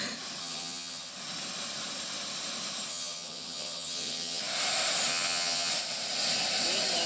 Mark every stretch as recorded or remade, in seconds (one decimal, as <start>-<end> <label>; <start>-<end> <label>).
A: 0.0-0.4 recorded; 0.4-1.1 remade; 1.1-2.9 recorded; 2.9-4.4 remade; 4.4-5.1 recorded; 5.1-5.7 remade; 5.7-7.1 recorded